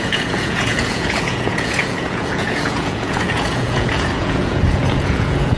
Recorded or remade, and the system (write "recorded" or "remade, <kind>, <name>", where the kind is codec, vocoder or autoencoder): remade, vocoder, Vocos